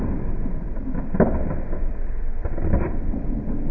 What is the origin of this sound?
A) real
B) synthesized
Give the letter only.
A